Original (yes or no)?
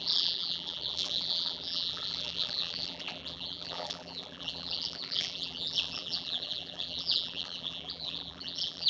no